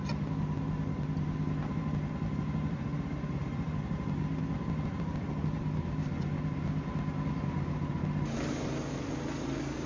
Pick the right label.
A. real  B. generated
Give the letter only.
A